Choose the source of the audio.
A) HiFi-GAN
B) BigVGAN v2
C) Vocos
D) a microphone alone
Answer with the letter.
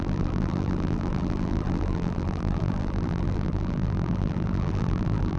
B